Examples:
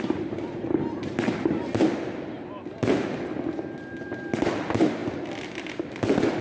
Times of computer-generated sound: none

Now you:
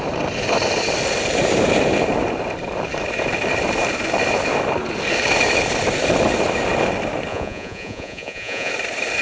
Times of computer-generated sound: 7.3-8.7 (vocoder, Vocos)

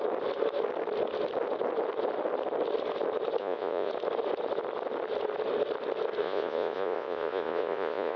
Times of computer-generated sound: 3.4-3.9 (vocoder, Vocos); 6.2-8.2